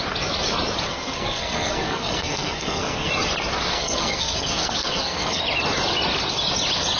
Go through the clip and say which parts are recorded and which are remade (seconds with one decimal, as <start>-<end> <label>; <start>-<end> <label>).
0.0-0.9 recorded; 0.9-3.1 remade; 3.1-3.7 recorded; 3.7-5.4 remade; 5.4-7.0 recorded